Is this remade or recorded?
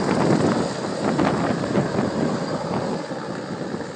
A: recorded